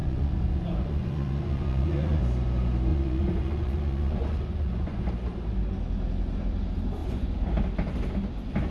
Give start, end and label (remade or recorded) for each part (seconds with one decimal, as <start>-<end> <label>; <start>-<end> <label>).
0.0-2.2 remade; 2.2-2.9 recorded; 2.9-5.1 remade; 5.1-7.0 recorded; 7.0-7.5 remade; 7.5-8.7 recorded